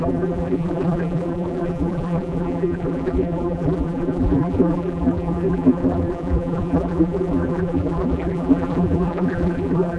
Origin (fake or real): fake